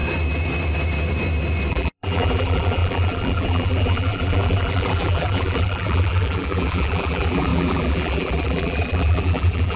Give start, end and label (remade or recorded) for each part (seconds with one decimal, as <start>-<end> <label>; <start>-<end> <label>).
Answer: 0.0-1.7 recorded; 1.7-9.8 remade